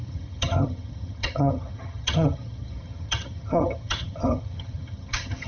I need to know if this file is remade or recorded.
remade